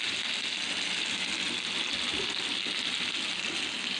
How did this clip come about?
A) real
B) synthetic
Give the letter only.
A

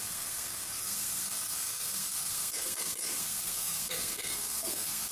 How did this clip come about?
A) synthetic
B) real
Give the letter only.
A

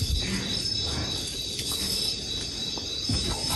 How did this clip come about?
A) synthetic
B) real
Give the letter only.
B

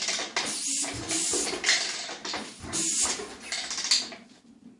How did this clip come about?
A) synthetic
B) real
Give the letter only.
B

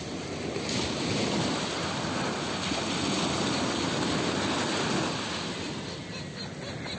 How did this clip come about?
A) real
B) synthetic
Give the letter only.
A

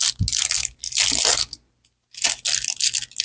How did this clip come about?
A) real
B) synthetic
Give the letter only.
A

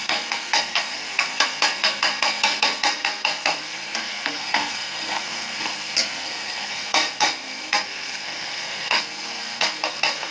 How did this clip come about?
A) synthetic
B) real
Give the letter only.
A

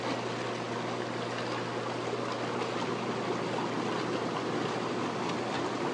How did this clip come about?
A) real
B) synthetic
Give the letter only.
A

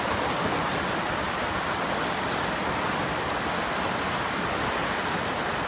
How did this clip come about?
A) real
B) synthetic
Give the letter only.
A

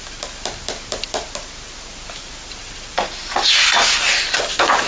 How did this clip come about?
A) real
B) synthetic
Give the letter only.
A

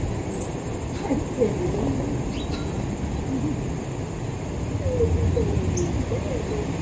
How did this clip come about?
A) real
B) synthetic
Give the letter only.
A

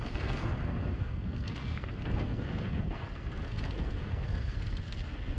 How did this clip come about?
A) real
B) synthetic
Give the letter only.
B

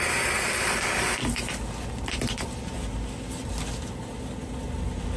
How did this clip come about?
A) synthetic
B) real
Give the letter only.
B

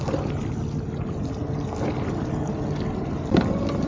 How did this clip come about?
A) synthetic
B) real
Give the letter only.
B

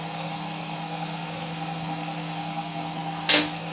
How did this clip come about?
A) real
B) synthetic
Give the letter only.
B